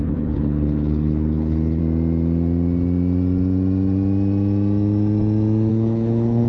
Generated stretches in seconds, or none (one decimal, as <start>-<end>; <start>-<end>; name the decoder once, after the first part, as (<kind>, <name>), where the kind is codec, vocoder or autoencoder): 0.0-1.8 (codec, HILCodec); 5.7-6.5

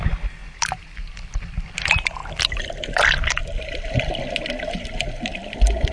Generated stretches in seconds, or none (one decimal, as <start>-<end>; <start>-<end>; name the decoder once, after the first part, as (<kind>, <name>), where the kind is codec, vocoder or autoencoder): none